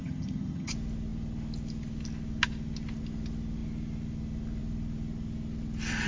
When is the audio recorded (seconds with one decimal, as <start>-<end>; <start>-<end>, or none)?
0.7-6.1